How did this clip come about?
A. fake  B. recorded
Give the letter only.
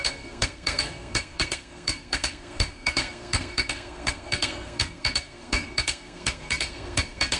A